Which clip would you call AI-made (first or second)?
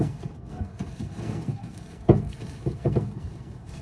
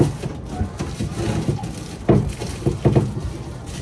first